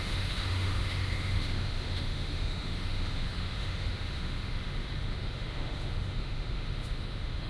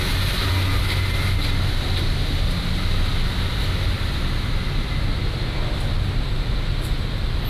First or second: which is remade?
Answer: first